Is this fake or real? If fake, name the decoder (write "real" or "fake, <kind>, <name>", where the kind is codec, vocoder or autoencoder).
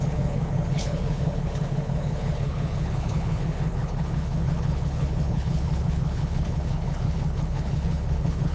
fake, codec, HILCodec